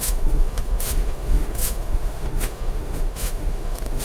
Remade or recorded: remade